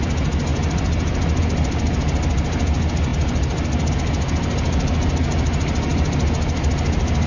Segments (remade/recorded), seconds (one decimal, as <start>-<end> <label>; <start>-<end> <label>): 0.0-7.3 recorded